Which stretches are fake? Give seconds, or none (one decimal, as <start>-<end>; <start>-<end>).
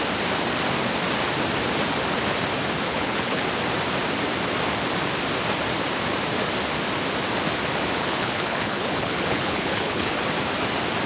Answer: 2.9-3.4; 8.0-10.2